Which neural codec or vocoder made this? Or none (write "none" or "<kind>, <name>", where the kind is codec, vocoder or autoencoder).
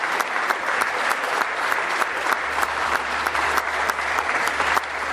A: vocoder, BigVGAN v2